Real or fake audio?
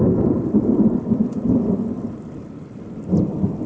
real